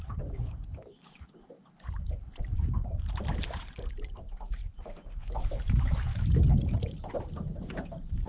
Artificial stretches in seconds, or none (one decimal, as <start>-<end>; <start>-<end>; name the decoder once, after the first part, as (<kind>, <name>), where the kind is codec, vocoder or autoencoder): 0.0-4.6 (vocoder, BigVGAN v2); 5.4-6.1; 7.1-8.3